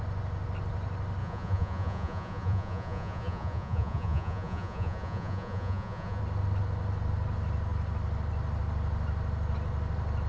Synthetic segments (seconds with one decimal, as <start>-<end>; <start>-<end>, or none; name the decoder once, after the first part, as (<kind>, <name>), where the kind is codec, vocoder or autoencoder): 1.2-6.2 (vocoder, Vocos)